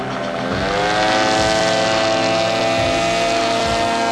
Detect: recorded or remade recorded